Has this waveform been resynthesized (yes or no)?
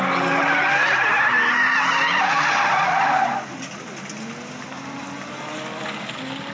no